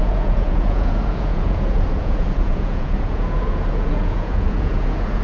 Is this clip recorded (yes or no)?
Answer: no